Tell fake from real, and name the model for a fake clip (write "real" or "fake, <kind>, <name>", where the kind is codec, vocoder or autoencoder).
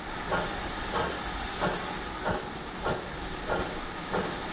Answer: real